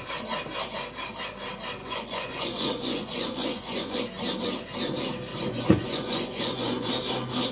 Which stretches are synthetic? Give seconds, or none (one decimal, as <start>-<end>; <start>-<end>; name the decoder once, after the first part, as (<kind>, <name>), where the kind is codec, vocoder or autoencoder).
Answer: 1.8-4.0 (vocoder, Vocos); 5.3-6.9